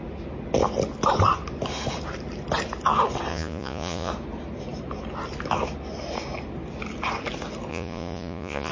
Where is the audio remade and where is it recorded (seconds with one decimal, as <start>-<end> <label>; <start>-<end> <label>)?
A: 0.0-3.3 recorded; 3.3-4.1 remade; 4.1-7.7 recorded; 7.7-8.7 remade